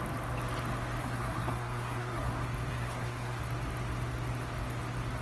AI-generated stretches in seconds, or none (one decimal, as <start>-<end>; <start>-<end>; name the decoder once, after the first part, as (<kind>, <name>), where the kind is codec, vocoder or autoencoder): 1.0-2.3 (codec, SNAC); 2.7-3.4